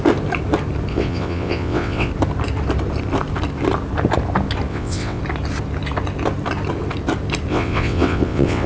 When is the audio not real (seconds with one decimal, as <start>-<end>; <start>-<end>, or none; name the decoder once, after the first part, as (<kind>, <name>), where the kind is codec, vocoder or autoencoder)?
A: 0.9-2.1 (vocoder, WaveNeXt); 4.7-5.2; 7.5-8.7